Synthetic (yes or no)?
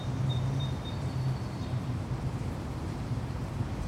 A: yes